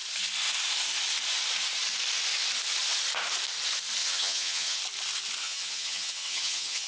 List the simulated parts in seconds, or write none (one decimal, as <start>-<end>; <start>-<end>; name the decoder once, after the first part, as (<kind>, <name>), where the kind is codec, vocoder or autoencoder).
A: 4.0-4.8 (vocoder, HiFi-GAN); 5.4-6.9